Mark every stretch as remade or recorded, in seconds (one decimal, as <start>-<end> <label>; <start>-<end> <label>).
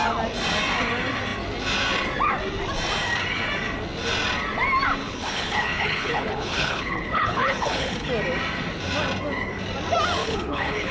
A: 0.0-5.0 recorded; 5.0-8.1 remade; 8.1-10.2 recorded; 10.2-10.9 remade